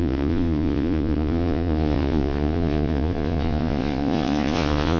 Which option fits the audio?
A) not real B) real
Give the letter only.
A